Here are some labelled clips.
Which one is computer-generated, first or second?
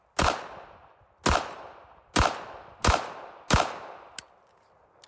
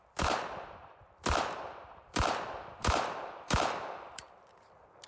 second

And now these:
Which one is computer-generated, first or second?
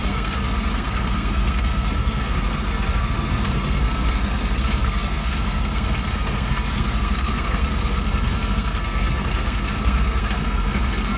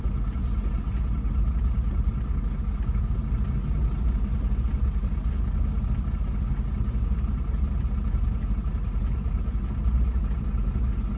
first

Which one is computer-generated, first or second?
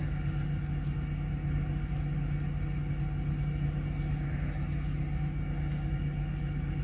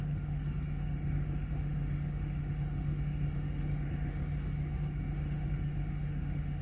second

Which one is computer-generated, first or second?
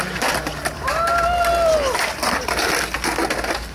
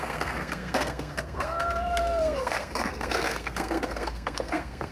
second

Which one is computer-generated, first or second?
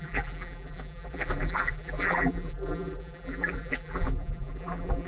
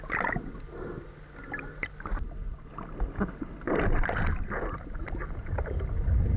first